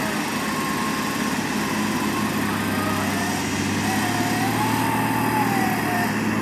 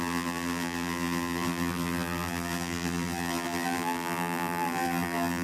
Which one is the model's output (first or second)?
second